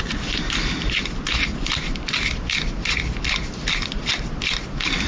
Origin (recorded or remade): recorded